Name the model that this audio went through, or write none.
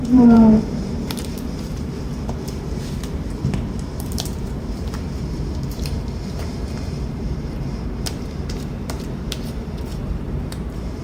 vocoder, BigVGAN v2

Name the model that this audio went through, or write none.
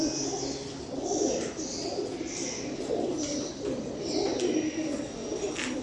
none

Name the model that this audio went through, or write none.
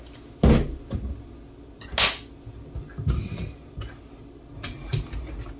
none